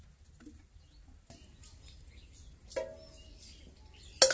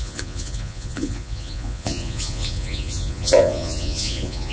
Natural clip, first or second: first